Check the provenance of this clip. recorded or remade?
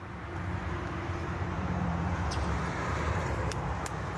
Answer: remade